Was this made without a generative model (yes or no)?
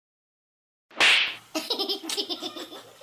yes